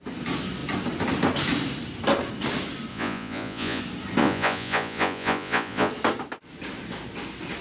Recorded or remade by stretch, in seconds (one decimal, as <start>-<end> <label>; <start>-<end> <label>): 0.0-2.9 recorded; 2.9-3.8 remade; 3.8-4.2 recorded; 4.2-5.9 remade; 5.9-7.6 recorded